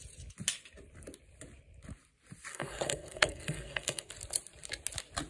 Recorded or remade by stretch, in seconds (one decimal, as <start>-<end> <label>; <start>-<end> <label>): 0.0-2.5 recorded; 2.5-4.1 remade; 4.1-5.3 recorded